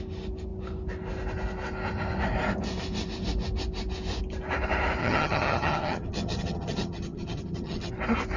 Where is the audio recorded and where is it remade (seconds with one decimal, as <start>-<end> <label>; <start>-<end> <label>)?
0.0-5.0 recorded; 5.0-7.9 remade; 7.9-8.4 recorded